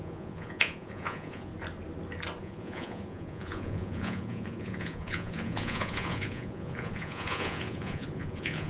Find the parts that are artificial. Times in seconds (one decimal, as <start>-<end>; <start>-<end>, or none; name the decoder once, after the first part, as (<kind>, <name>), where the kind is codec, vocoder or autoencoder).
0.0-1.5 (vocoder, Vocos); 2.4-8.7